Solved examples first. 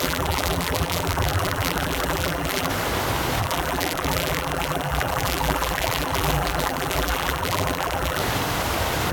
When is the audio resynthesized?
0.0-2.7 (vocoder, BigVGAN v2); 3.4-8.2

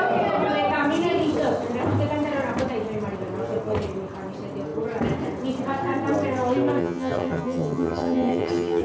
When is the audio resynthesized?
6.8-8.8 (vocoder, HiFi-GAN)

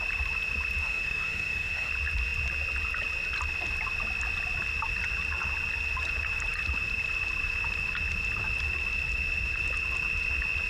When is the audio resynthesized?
0.8-1.9 (autoencoder, DAC-VAE)

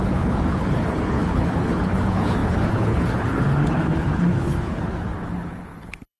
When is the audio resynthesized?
0.0-6.2 (codec, HILCodec)

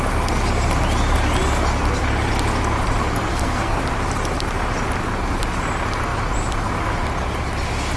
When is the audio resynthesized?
3.3-3.8 (codec, SNAC)

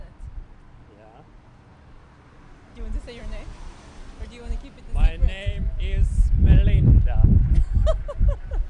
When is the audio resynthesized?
none

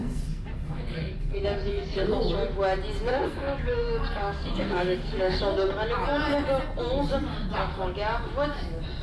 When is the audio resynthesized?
0.0-2.1 (codec, SNAC); 3.1-5.4

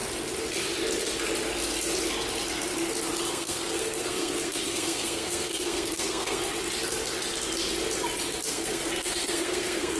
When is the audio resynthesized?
3.3-6.4 (codec, SNAC); 8.5-10.0